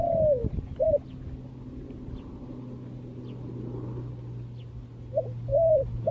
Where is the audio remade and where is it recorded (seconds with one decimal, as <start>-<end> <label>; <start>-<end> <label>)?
0.0-0.4 recorded; 0.4-4.1 remade; 4.1-5.5 recorded; 5.5-6.1 remade